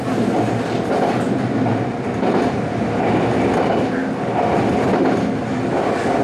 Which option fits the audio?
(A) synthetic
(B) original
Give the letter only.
B